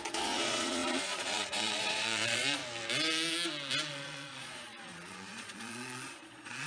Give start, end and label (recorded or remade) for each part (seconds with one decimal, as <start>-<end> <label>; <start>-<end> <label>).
0.0-2.6 remade; 2.6-3.9 recorded; 3.9-6.7 remade